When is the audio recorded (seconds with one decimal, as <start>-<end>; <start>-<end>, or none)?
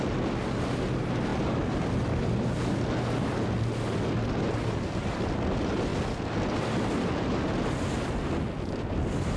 0.0-9.4